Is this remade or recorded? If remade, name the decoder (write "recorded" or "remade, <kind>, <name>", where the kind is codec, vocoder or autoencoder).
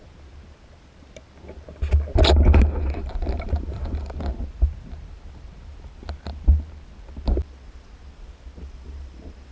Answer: recorded